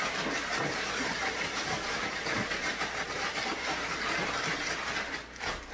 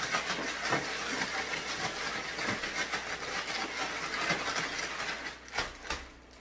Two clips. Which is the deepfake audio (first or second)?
first